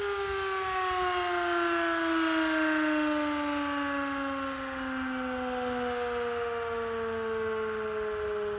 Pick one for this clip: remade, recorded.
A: recorded